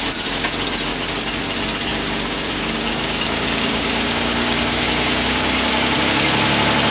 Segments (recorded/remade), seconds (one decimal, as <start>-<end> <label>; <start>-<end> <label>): 0.0-1.9 recorded; 1.9-6.0 remade; 6.0-6.9 recorded